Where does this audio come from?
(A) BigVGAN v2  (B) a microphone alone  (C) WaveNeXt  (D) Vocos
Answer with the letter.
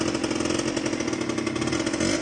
B